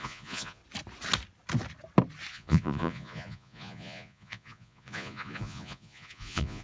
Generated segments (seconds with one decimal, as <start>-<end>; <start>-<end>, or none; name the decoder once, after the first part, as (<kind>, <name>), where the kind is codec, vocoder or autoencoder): 0.0-0.6 (vocoder, Vocos); 2.3-6.6